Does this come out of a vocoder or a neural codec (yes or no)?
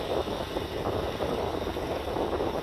no